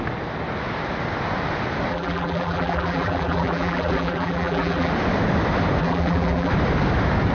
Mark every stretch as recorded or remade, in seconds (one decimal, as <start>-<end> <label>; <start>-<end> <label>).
0.0-1.9 recorded; 1.9-4.9 remade; 4.9-5.8 recorded; 5.8-6.5 remade; 6.5-7.3 recorded